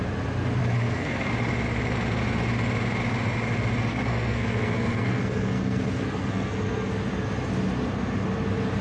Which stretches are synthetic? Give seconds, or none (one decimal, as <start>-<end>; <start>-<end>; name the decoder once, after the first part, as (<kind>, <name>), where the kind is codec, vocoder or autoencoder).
0.6-1.3 (codec, SNAC); 3.9-6.9